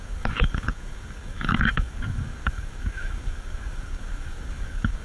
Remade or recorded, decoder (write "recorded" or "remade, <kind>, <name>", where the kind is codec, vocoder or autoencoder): remade, codec, DAC